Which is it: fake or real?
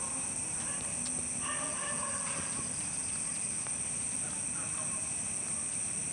real